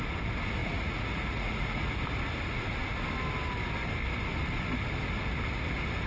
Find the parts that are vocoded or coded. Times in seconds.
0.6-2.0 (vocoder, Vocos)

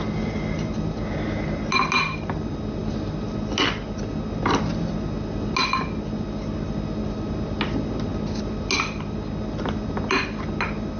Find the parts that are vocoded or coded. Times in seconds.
none

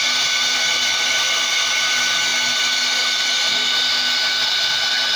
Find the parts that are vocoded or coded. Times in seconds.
none

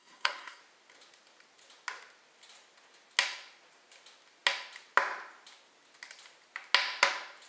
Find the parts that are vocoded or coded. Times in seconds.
0.0-0.6 (codec, SNAC)

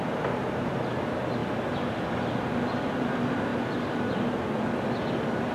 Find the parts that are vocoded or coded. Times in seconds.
none